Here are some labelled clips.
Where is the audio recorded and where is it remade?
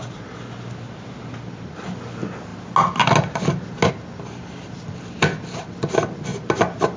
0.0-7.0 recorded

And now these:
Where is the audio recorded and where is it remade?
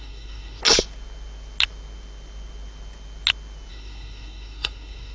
0.0-0.6 remade; 0.6-3.7 recorded; 3.7-5.1 remade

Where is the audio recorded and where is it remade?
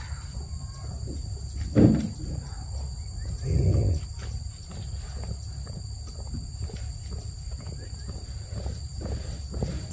0.0-9.9 recorded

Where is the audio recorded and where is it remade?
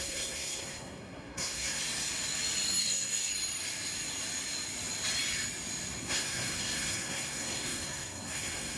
0.0-1.8 remade; 1.8-2.8 recorded; 2.8-3.3 remade; 3.3-6.0 recorded; 6.0-8.8 remade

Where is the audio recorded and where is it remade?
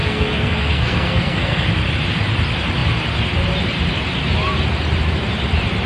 0.0-1.7 remade; 1.7-5.9 recorded